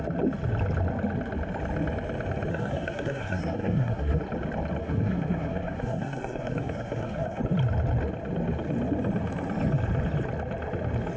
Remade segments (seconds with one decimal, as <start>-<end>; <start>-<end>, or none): 2.5-4.2; 4.8-7.4